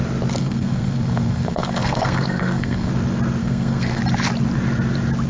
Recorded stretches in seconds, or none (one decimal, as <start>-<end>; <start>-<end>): 0.0-0.4; 2.9-3.4; 4.0-5.3